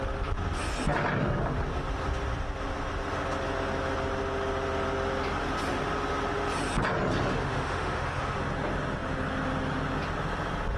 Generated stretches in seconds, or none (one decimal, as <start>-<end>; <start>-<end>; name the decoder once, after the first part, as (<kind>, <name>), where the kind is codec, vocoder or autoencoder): 7.4-8.2 (autoencoder, DAC-VAE)